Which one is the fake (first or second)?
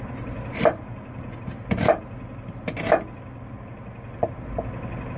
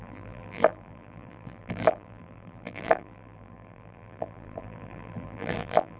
second